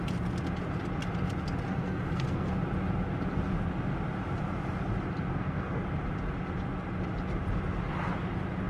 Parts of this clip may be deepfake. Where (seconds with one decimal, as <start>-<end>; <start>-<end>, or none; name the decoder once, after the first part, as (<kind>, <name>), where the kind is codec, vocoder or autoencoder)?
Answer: 1.7-2.5 (codec, SNAC); 5.3-5.8